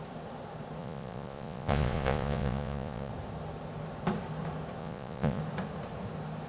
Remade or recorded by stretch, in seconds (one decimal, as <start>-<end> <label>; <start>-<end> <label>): 0.0-0.8 recorded; 0.8-3.1 remade; 3.1-4.8 recorded; 4.8-5.4 remade; 5.4-6.5 recorded